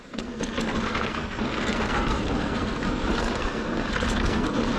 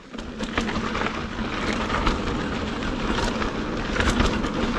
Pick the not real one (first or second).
first